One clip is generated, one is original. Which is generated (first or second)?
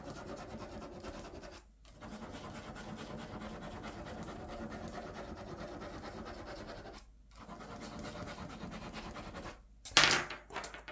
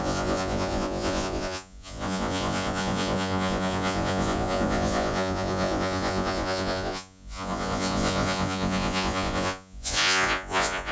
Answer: second